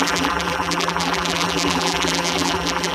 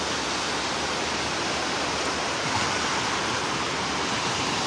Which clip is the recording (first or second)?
second